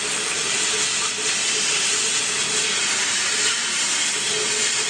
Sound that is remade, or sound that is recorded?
recorded